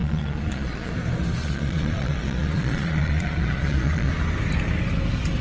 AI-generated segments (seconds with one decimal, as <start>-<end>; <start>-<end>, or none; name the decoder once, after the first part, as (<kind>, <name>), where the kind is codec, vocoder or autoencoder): 0.0-0.9 (vocoder, Vocos); 1.4-4.1